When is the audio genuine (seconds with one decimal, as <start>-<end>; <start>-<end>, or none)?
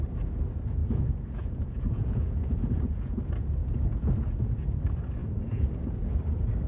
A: 0.0-0.8; 3.2-3.6; 4.8-5.2; 5.8-6.7